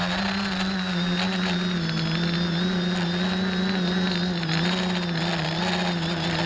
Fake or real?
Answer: real